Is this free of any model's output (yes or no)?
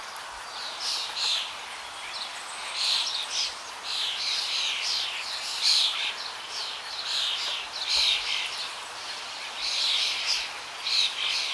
yes